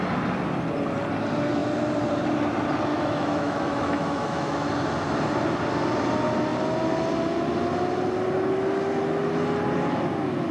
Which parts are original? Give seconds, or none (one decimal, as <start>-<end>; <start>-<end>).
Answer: 0.0-2.9; 4.7-10.5